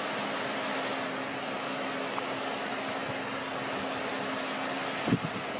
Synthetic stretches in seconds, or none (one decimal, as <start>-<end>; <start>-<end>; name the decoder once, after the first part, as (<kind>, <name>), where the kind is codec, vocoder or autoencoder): none